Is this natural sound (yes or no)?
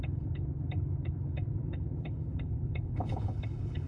no